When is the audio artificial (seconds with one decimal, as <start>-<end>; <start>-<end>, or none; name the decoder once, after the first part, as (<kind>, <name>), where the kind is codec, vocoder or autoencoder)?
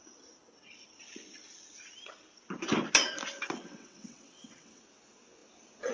3.6-4.8 (vocoder, WaveNeXt)